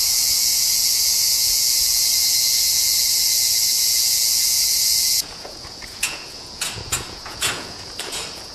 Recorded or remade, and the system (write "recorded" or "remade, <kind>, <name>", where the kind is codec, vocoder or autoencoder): remade, vocoder, Vocos